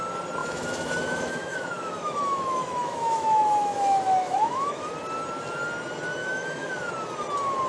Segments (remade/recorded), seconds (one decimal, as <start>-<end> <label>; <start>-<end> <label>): 0.0-0.4 recorded; 0.4-4.9 remade; 4.9-6.2 recorded; 6.2-6.9 remade; 6.9-7.7 recorded